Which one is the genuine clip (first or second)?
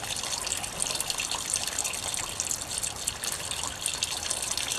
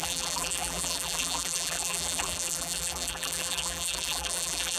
first